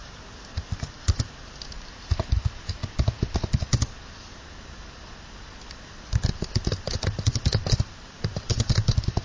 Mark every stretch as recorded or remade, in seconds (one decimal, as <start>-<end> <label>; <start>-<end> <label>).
0.0-0.7 recorded; 0.7-2.8 remade; 2.8-6.1 recorded; 6.1-9.2 remade